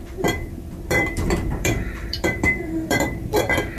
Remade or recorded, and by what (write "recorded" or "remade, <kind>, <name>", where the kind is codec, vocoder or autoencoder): remade, vocoder, BigVGAN v2